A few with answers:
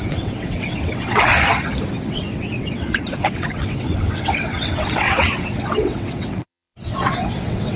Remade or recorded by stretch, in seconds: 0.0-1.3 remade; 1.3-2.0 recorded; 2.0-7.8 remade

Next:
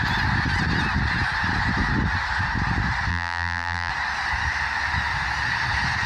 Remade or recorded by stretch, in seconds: 0.0-3.1 recorded; 3.1-3.9 remade; 3.9-6.1 recorded

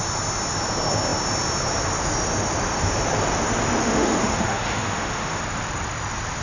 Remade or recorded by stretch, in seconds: 0.0-3.8 recorded; 3.8-5.4 remade; 5.4-6.4 recorded

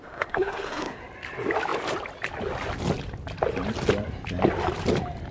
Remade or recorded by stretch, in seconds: 0.0-1.0 remade; 1.0-5.3 recorded

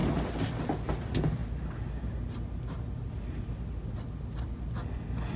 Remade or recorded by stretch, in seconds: 0.0-5.4 recorded

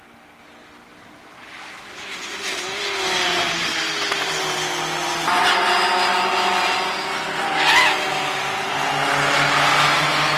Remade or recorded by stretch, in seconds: 0.0-10.4 recorded